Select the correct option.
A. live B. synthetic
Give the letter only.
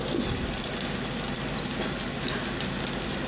A